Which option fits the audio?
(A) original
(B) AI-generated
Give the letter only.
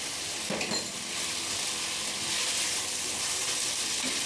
A